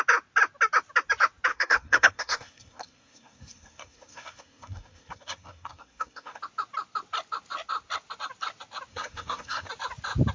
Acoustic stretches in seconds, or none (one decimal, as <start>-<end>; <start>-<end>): 0.0-1.5; 6.4-8.9; 9.7-10.3